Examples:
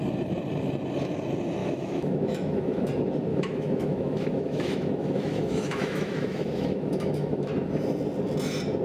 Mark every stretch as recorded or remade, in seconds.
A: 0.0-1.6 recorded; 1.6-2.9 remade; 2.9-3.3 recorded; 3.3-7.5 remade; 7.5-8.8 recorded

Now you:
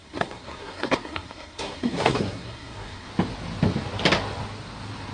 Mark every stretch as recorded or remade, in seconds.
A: 0.0-3.1 remade; 3.1-5.1 recorded

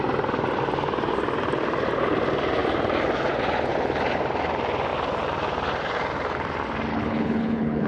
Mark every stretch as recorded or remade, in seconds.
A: 0.0-6.9 recorded; 6.9-7.9 remade

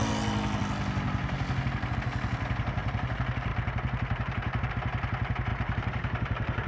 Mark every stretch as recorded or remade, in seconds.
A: 0.0-3.5 recorded; 3.5-4.7 remade; 4.7-5.5 recorded; 5.5-6.7 remade

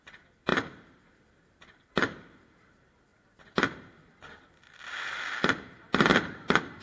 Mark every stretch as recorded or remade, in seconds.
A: 0.0-0.5 recorded; 0.5-1.2 remade; 1.2-6.8 recorded

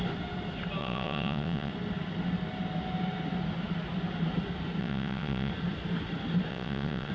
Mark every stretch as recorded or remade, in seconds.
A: 0.0-0.8 recorded; 0.8-1.7 remade; 1.7-4.8 recorded; 4.8-5.5 remade; 5.5-6.5 recorded; 6.5-7.1 remade